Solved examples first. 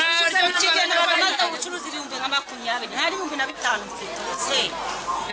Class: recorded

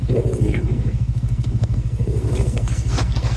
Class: remade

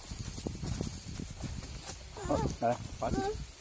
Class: recorded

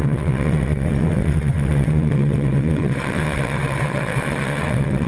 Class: remade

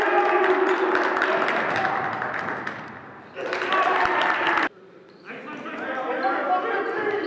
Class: recorded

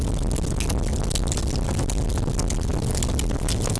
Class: recorded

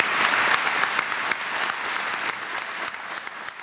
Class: recorded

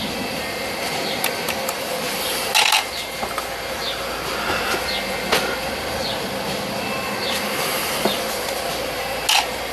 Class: recorded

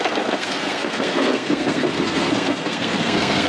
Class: remade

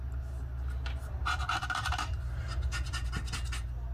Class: recorded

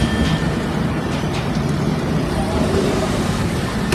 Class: remade